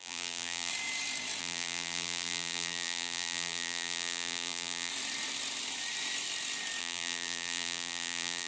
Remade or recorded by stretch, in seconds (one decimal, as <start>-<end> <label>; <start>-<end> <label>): 0.0-0.7 remade; 0.7-1.4 recorded; 1.4-4.9 remade; 4.9-6.8 recorded; 6.8-8.5 remade